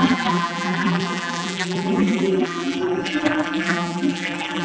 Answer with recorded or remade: remade